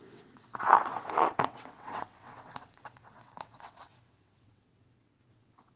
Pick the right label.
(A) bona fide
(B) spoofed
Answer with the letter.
B